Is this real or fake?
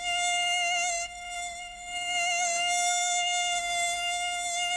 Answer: fake